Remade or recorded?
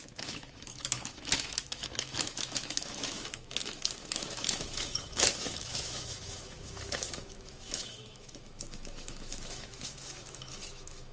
remade